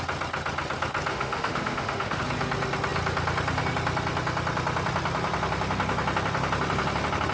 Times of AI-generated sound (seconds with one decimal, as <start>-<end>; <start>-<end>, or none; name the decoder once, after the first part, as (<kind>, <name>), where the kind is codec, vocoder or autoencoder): 1.1-2.2 (autoencoder, DAC-VAE)